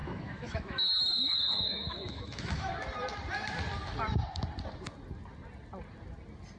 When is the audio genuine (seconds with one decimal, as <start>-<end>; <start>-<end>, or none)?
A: 2.7-6.6